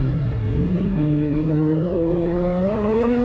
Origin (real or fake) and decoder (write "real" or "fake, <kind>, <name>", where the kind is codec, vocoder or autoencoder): fake, codec, SNAC